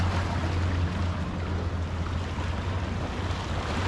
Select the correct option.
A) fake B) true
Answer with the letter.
B